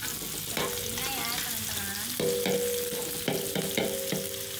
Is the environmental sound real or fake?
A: real